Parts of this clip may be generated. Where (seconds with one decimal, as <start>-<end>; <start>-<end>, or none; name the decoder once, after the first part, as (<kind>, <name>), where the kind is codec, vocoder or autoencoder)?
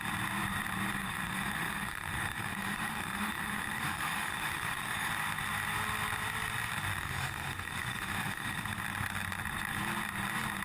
0.9-5.1 (autoencoder, DAC-VAE); 6.9-8.6